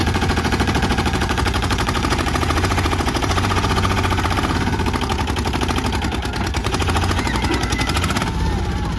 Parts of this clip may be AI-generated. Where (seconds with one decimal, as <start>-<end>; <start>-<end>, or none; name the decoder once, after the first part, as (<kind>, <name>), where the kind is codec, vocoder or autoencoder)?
0.0-4.2 (vocoder, Vocos); 6.6-8.2